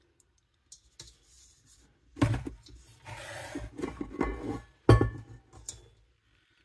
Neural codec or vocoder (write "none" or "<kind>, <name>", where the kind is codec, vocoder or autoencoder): none